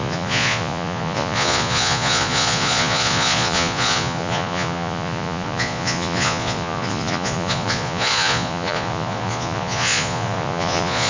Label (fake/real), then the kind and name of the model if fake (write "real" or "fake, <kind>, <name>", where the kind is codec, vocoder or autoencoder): fake, vocoder, Vocos